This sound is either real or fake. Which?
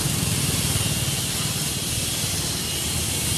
real